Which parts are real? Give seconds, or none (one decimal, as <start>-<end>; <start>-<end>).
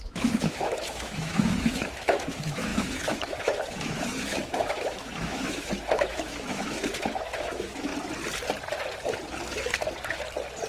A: 7.9-10.7